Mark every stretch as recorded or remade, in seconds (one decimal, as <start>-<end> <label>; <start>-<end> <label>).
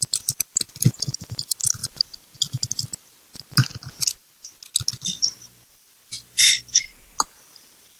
0.0-1.8 remade; 1.8-5.7 recorded; 5.7-8.0 remade